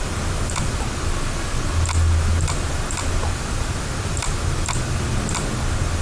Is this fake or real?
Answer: real